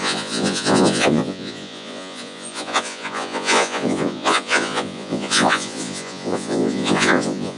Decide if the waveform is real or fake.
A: fake